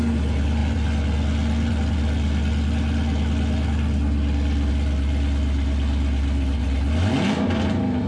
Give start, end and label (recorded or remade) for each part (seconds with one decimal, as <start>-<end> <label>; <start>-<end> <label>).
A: 0.0-8.1 recorded